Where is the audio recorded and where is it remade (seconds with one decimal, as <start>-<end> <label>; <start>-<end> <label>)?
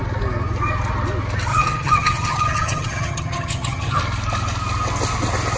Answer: 0.0-1.5 recorded; 1.5-4.0 remade; 4.0-5.6 recorded